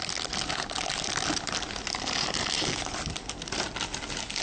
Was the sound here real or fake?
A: real